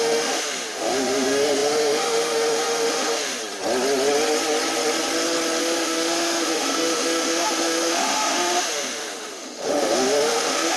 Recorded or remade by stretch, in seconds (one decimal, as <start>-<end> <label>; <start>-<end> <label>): 0.0-3.4 remade; 3.4-5.6 recorded; 5.6-10.8 remade